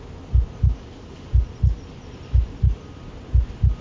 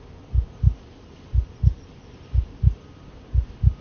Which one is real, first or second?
first